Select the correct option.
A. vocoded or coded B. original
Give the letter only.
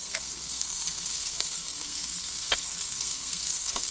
A